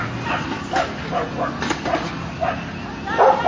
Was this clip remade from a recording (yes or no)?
no